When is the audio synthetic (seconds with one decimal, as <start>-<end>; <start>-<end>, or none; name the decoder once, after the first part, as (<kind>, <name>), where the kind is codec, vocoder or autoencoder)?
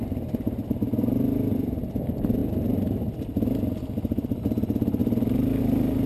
2.4-3.1 (vocoder, BigVGAN v2)